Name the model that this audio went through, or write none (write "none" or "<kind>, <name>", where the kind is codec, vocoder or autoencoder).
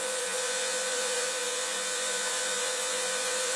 vocoder, Vocos